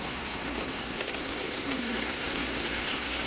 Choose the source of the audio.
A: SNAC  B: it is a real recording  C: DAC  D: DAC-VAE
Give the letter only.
A